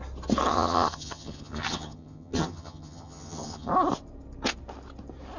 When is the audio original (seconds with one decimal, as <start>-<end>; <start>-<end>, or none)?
0.0-0.5; 3.7-5.4